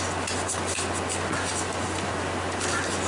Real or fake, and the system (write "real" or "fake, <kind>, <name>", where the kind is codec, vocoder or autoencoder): real